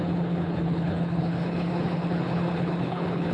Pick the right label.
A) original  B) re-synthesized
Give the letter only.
B